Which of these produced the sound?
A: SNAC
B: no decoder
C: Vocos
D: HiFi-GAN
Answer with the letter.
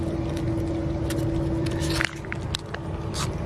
B